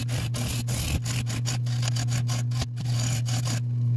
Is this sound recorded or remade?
recorded